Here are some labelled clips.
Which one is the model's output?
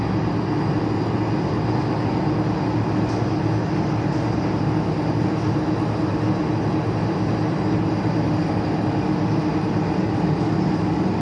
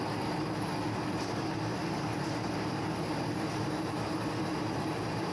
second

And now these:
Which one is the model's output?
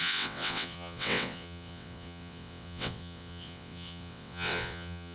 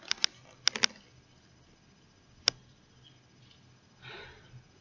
first